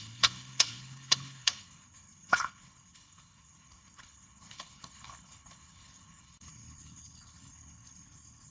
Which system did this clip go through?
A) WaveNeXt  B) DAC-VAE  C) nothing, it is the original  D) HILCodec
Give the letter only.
D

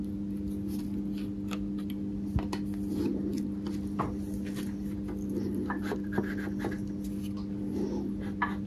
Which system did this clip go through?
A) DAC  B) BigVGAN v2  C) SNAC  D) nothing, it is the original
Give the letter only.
D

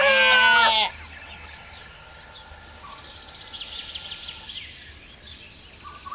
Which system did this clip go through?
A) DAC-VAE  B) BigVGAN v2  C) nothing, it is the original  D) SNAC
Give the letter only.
C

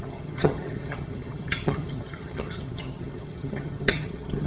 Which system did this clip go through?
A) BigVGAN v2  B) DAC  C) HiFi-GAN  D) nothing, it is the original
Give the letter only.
C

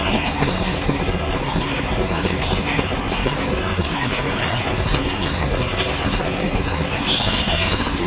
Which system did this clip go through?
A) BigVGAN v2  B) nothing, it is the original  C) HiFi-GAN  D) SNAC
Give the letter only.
D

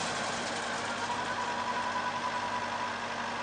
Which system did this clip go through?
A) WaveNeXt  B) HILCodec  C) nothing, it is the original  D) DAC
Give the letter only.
C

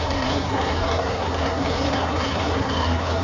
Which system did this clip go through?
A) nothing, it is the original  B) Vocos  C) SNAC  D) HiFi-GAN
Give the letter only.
C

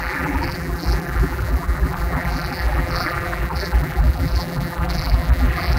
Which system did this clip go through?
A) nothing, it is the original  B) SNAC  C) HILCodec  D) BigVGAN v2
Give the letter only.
D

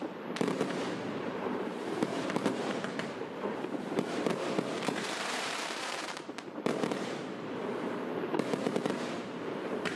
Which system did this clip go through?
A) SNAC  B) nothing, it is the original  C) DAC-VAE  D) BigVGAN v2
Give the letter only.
D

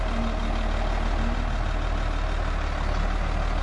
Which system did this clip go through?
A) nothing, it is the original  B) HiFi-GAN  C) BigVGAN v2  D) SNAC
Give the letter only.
A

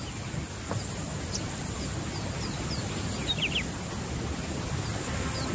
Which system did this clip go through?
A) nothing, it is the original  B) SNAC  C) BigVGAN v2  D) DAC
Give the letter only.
A